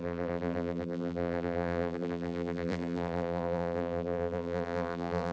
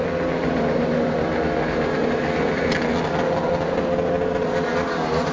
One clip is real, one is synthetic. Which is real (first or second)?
second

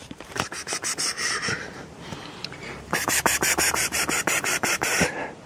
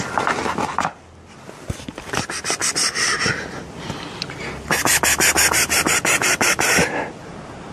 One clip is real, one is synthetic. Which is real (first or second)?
second